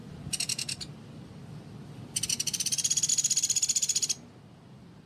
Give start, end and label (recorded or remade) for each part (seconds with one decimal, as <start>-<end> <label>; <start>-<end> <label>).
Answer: 0.0-5.1 recorded